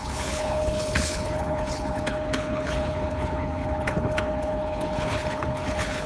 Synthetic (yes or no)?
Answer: yes